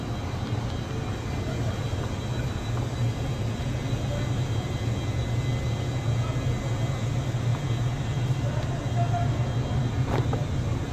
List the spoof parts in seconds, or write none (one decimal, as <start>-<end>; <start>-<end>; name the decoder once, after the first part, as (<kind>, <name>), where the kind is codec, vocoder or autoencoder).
none